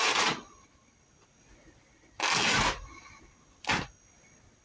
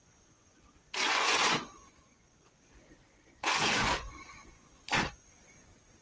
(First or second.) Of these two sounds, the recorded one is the first